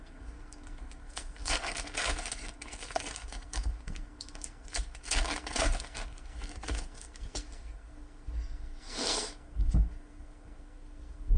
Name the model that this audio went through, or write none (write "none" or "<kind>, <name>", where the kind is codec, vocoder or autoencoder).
codec, SNAC